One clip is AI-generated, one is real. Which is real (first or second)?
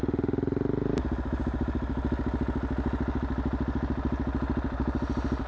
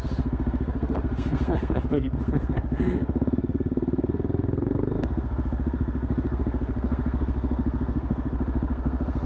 first